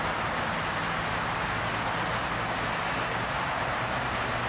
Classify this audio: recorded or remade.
recorded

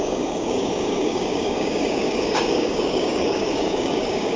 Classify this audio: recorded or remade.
remade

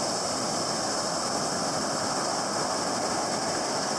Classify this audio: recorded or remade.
recorded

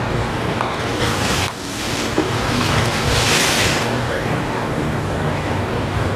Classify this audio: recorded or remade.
remade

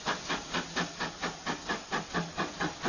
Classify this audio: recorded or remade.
recorded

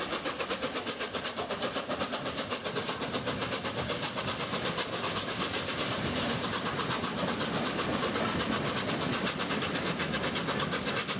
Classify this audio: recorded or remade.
recorded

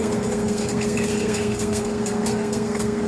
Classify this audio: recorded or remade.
remade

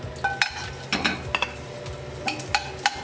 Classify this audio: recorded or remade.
recorded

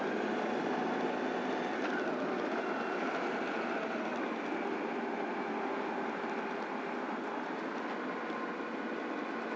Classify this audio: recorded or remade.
recorded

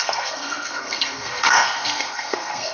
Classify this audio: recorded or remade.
remade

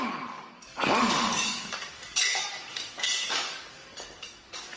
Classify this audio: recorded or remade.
remade